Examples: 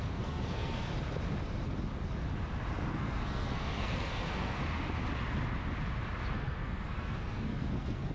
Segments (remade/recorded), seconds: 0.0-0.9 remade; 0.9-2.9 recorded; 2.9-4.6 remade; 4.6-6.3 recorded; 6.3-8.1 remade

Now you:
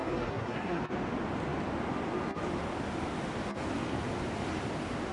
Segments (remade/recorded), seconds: 0.0-0.8 remade; 0.8-5.1 recorded